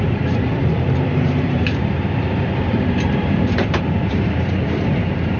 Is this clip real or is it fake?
fake